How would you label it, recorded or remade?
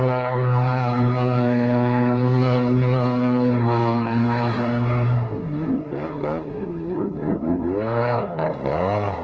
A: remade